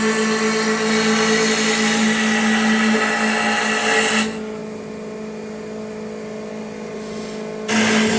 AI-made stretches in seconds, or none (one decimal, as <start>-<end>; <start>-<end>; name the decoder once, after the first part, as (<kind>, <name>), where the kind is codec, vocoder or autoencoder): none